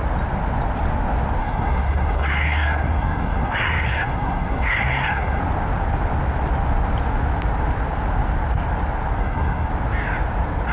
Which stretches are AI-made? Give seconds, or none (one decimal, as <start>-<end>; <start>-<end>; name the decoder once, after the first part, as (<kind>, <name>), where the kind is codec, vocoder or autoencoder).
1.4-5.4 (codec, SNAC); 9.2-9.7